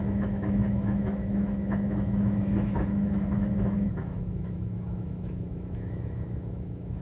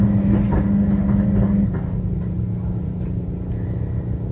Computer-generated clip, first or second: first